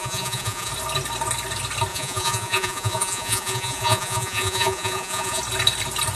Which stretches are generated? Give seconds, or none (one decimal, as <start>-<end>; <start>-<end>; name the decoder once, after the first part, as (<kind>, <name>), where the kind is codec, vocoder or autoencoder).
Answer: 0.0-0.7 (vocoder, Vocos); 1.9-5.4